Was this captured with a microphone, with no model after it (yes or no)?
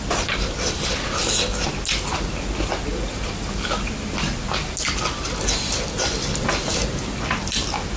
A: yes